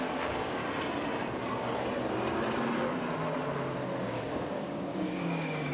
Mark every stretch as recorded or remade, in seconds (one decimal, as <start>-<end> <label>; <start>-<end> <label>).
0.0-0.6 remade; 0.6-4.0 recorded; 4.0-5.7 remade